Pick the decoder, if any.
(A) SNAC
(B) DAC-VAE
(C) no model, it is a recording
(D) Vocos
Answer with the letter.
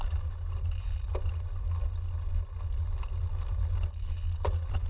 C